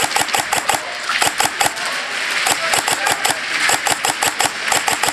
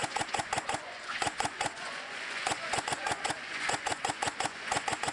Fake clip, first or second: second